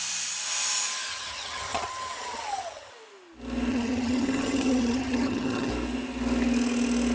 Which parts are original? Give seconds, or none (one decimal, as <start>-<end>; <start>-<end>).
0.0-1.1; 2.9-3.7; 5.7-7.1